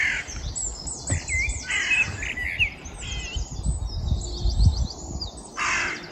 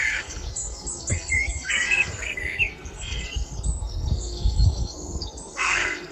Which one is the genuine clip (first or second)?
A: first